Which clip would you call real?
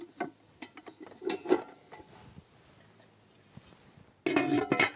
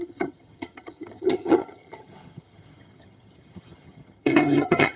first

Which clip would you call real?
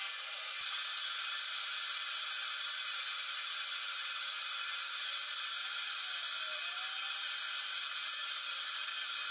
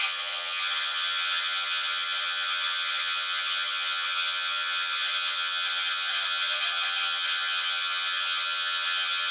first